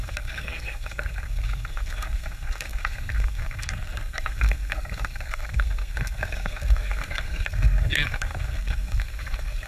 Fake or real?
fake